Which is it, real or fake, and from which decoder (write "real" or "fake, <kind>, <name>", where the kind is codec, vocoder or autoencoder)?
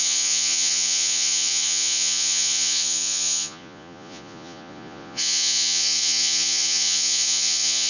fake, vocoder, Vocos